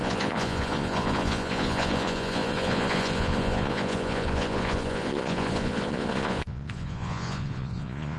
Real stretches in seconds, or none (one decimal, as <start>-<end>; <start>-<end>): none